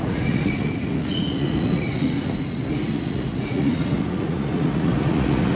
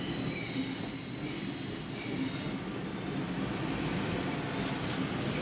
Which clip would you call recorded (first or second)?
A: second